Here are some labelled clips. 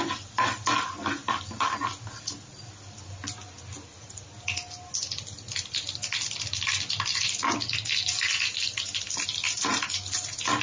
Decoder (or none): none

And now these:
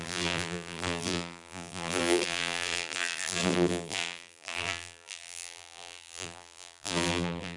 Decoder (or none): vocoder, BigVGAN v2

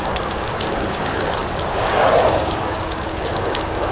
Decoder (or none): codec, DAC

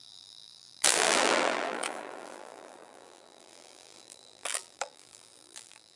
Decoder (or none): vocoder, BigVGAN v2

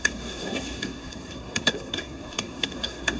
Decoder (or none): codec, SNAC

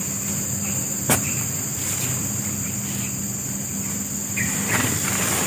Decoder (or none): vocoder, BigVGAN v2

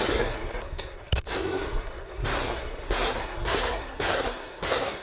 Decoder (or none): codec, SNAC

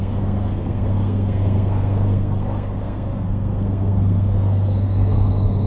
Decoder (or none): codec, SNAC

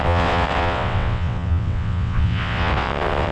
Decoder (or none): vocoder, WaveNeXt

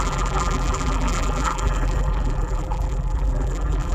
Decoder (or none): vocoder, BigVGAN v2